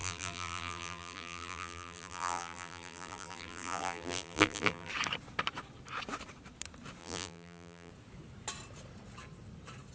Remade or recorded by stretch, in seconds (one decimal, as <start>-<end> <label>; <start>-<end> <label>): 0.0-4.9 remade; 4.9-7.0 recorded; 7.0-7.9 remade; 7.9-9.9 recorded